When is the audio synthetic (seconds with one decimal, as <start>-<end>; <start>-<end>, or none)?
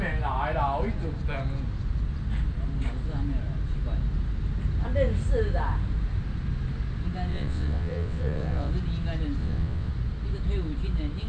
7.3-8.7; 9.4-9.9